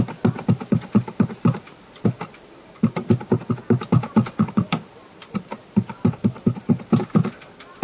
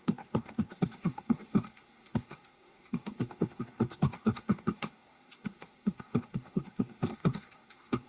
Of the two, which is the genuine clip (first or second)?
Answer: first